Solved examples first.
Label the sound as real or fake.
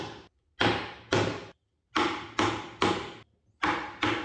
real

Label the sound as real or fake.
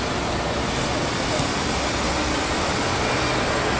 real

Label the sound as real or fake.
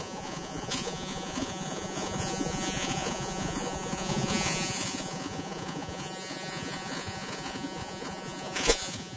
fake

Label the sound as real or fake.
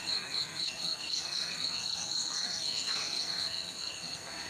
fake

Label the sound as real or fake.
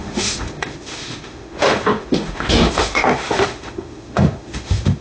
fake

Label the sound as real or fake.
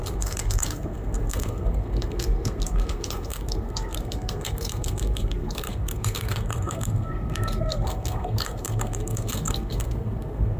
fake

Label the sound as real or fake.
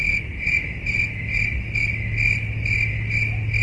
real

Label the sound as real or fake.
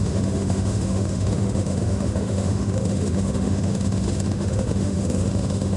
fake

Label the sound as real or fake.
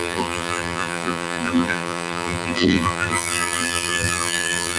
fake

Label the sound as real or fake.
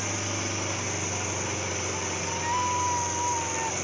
real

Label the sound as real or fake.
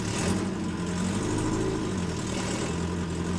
real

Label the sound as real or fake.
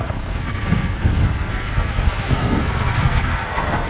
fake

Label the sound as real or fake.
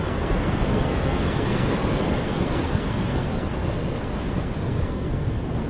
fake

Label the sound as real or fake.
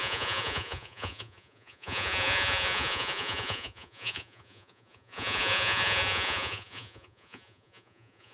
fake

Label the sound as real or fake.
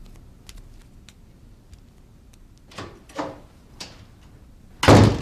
real